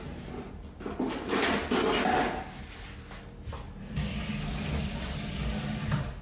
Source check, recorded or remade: recorded